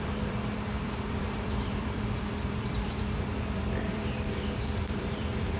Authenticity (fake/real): fake